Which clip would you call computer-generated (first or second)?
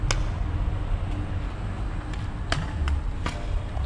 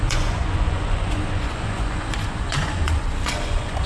second